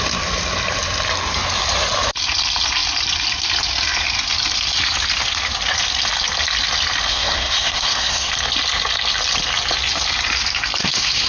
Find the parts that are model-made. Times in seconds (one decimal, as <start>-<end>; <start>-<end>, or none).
7.1-8.3; 10.8-11.3